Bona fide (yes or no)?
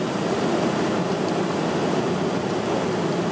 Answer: yes